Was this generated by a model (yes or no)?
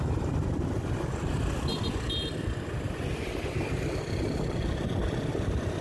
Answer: no